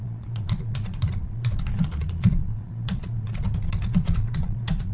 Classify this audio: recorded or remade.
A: remade